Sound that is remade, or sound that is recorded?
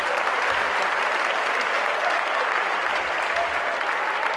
remade